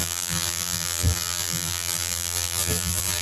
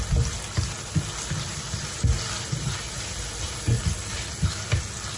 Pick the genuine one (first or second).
second